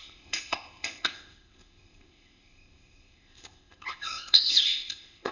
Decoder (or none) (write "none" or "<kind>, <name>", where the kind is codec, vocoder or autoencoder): codec, ZipCodec